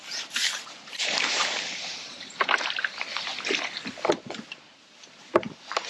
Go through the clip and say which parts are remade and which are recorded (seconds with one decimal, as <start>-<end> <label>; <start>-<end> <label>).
0.0-3.3 remade; 3.3-4.1 recorded; 4.1-5.9 remade

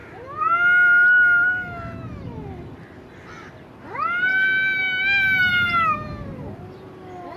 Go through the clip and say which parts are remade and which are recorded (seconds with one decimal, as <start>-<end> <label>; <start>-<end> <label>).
0.0-7.4 recorded

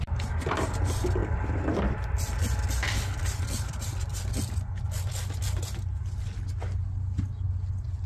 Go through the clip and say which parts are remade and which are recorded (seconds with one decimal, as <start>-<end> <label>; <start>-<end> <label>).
0.0-4.1 remade; 4.1-8.1 recorded